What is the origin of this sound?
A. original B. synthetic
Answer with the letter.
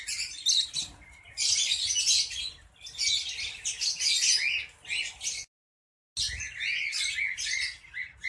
A